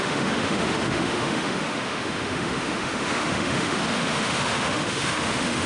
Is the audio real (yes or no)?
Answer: no